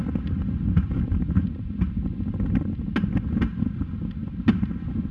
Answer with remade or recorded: recorded